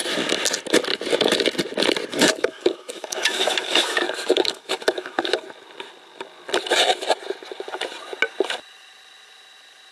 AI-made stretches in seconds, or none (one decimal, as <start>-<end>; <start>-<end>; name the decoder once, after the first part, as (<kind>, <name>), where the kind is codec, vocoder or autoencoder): 2.1-5.4 (autoencoder, DAC-VAE)